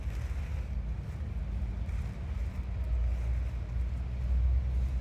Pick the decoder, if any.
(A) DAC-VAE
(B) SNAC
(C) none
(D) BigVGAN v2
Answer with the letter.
C